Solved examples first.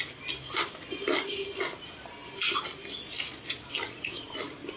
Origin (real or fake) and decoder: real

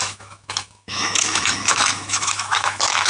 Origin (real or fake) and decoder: fake, autoencoder, DAC-VAE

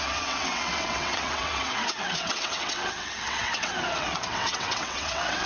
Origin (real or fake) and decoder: fake, vocoder, WaveNeXt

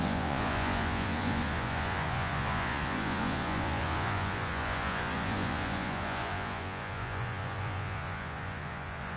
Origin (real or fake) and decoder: fake, vocoder, Vocos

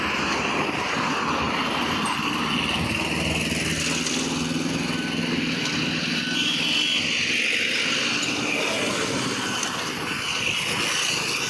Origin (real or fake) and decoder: real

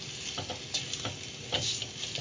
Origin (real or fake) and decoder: real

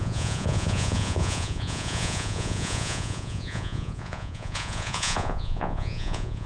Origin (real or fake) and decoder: fake, vocoder, Vocos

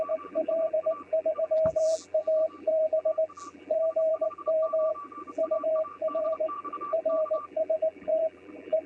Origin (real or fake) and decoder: fake, vocoder, BigVGAN v2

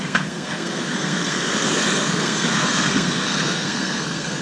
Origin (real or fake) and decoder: fake, codec, SNAC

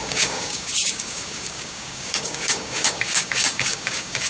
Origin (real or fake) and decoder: fake, codec, DAC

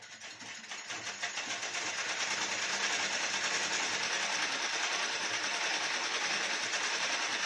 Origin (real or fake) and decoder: real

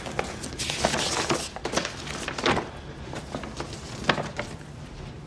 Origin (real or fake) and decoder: real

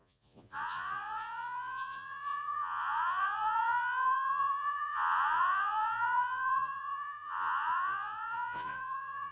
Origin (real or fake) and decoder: fake, vocoder, Vocos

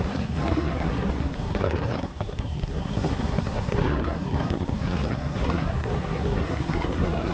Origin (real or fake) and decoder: fake, codec, SNAC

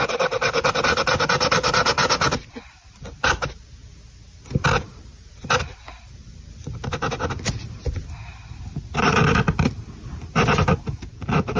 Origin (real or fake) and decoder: real